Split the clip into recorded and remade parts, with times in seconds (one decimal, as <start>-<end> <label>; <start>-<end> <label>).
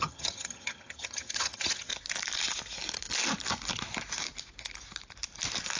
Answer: 0.0-1.9 remade; 1.9-5.8 recorded